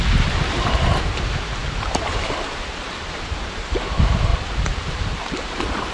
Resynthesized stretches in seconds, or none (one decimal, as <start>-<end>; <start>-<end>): 0.0-4.3; 4.8-5.9